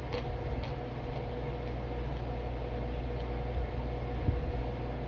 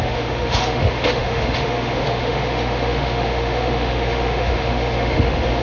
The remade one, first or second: second